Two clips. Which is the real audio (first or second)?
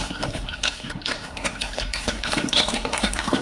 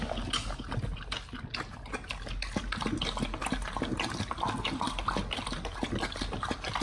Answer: second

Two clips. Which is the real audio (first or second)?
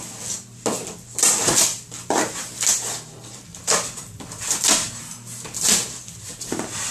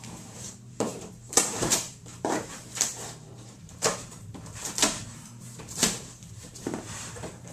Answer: first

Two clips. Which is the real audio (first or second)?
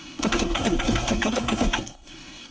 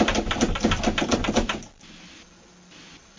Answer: second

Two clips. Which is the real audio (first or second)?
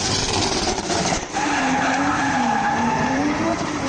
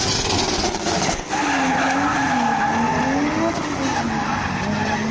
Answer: second